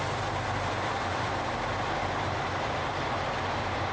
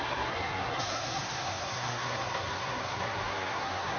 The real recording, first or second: first